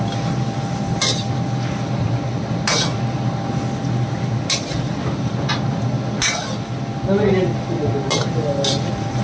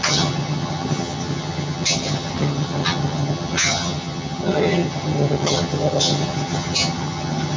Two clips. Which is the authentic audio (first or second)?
first